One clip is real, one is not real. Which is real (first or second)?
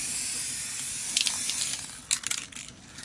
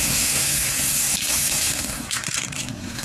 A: first